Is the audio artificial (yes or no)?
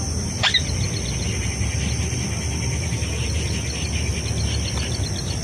no